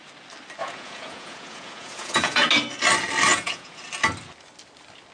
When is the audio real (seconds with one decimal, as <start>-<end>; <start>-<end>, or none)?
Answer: 0.0-0.6; 2.5-3.3; 3.8-5.1